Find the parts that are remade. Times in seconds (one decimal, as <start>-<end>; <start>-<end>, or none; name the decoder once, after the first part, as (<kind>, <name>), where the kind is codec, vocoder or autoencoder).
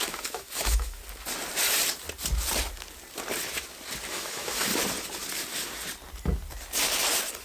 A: 0.0-1.0 (autoencoder, DAC-VAE); 4.1-4.7